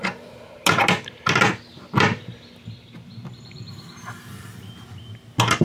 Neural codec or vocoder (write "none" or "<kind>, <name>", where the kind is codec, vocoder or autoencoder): none